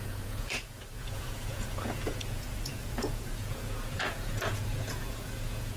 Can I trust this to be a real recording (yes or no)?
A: no